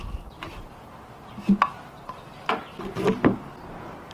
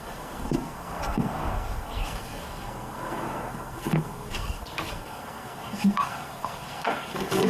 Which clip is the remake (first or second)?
second